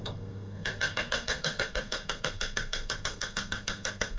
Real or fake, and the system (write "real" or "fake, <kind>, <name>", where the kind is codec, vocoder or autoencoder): fake, codec, SNAC